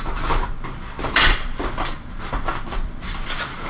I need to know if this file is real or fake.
fake